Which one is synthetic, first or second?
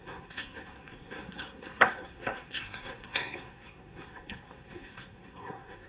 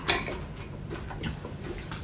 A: first